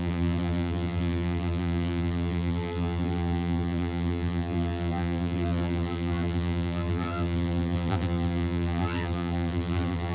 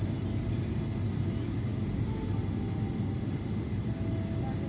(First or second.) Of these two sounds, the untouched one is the second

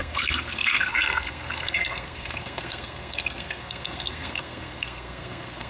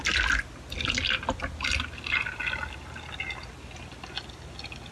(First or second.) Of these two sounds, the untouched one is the second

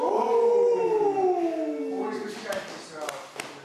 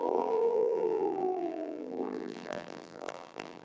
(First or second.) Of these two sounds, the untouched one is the first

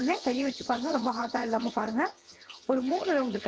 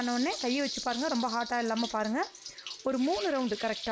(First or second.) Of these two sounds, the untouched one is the second